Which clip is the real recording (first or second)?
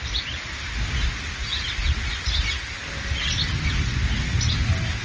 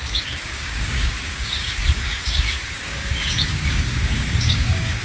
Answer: first